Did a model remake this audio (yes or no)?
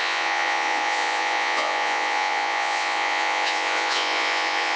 yes